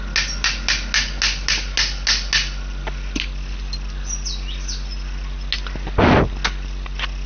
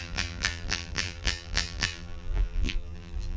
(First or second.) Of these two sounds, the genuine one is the first